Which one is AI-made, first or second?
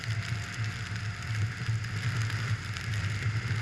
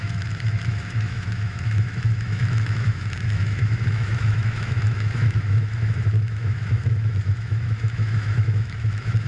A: second